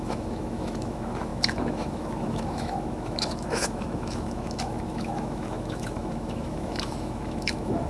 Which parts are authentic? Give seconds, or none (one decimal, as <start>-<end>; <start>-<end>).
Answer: none